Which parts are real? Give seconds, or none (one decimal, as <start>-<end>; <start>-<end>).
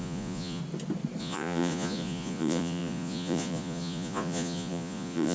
0.6-1.2